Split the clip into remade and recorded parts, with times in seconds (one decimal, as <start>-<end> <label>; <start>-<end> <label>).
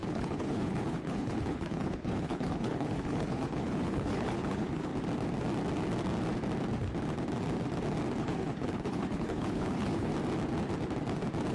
0.0-4.9 remade; 4.9-8.2 recorded; 8.2-10.1 remade; 10.1-11.5 recorded